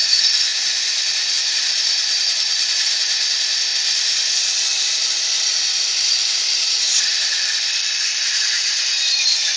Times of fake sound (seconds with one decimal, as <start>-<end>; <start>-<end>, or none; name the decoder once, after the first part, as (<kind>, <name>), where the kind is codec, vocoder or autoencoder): 0.0-3.7 (vocoder, BigVGAN v2); 4.6-9.6